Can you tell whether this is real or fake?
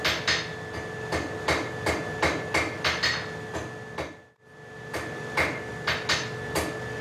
real